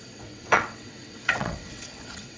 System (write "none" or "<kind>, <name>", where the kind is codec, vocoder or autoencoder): vocoder, WaveNeXt